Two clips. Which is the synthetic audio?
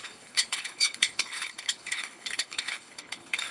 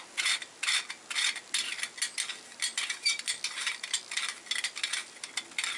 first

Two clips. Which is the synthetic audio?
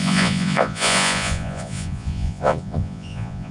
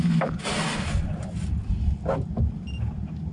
first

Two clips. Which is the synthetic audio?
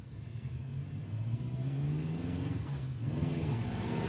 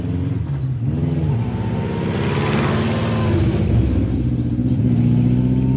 first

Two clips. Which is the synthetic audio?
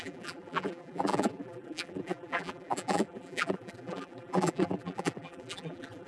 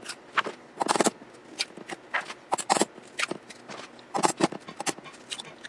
first